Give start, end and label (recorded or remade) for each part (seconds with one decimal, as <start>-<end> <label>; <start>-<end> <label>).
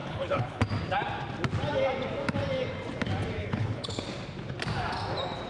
0.0-0.6 remade; 0.6-3.4 recorded; 3.4-4.0 remade; 4.0-5.5 recorded